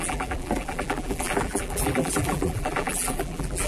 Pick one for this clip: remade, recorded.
remade